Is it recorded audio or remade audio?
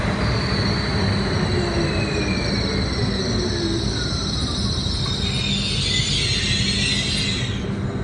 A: recorded